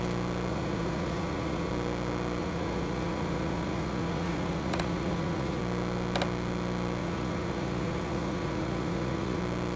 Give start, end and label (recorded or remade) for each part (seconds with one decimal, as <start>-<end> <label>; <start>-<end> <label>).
0.0-0.5 recorded; 0.5-1.7 remade; 1.7-2.4 recorded; 2.4-5.6 remade; 5.6-7.0 recorded; 7.0-9.4 remade; 9.4-9.8 recorded